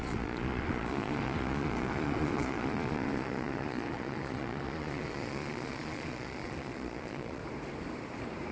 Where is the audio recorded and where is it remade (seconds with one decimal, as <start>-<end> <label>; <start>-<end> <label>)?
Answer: 0.0-7.4 remade; 7.4-8.5 recorded